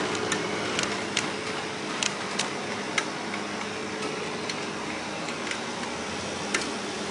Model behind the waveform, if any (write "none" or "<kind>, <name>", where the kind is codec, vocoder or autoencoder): none